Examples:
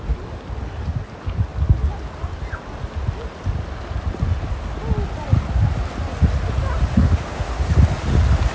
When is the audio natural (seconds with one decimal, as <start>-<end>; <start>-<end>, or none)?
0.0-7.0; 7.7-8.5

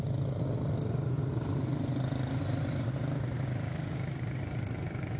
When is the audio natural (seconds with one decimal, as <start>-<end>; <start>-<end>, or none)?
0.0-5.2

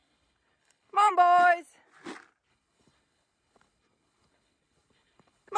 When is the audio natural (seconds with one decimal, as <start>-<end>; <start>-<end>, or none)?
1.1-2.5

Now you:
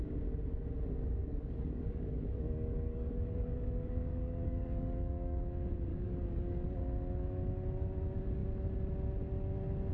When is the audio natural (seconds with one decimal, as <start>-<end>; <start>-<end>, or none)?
0.0-1.2; 5.4-5.9; 6.8-9.9